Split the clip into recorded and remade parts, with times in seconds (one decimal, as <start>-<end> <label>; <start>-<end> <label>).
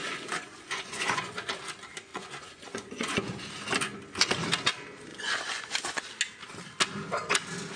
0.0-1.5 remade; 1.5-2.1 recorded; 2.1-3.5 remade; 3.5-5.1 recorded; 5.1-6.0 remade; 6.0-7.8 recorded